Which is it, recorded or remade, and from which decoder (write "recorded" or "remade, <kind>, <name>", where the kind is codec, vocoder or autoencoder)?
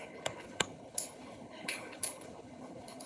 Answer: remade, codec, HILCodec